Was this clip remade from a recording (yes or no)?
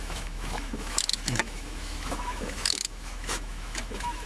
yes